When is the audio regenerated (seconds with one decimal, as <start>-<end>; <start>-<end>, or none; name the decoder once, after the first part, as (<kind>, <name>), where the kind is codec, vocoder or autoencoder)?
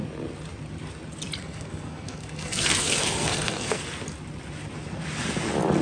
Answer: 1.4-3.8 (codec, SNAC)